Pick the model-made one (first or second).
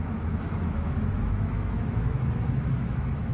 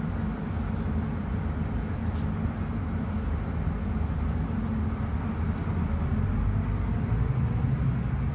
first